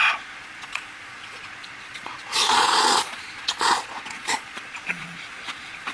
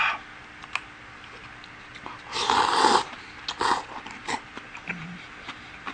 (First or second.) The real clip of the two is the second